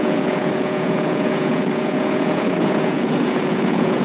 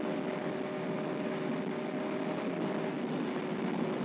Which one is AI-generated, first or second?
first